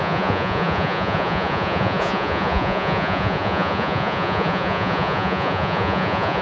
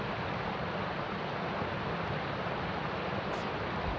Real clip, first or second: second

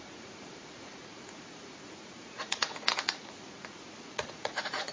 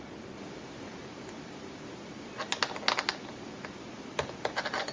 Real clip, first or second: second